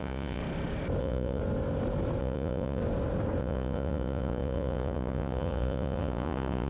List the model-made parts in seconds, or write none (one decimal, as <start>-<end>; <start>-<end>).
0.0-0.4; 1.0-1.4; 2.2-2.8; 3.4-6.7